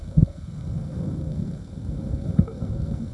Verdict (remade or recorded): remade